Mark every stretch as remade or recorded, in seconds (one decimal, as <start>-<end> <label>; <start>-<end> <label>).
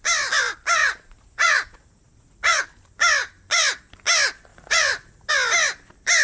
0.0-0.8 recorded; 0.8-2.6 remade; 2.6-4.5 recorded; 4.5-5.3 remade; 5.3-6.2 recorded